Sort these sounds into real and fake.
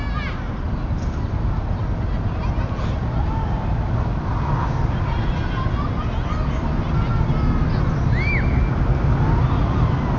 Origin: real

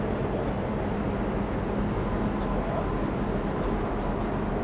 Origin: real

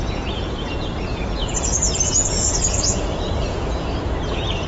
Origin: fake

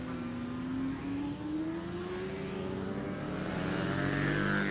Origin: real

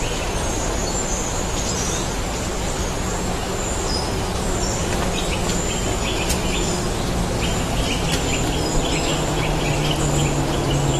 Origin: real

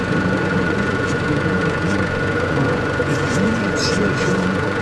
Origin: fake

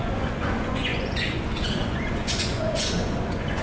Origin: fake